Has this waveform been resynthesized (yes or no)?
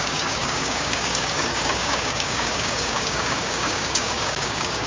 yes